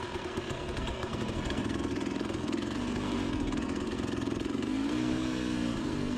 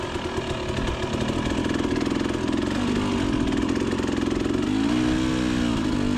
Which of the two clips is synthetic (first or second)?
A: first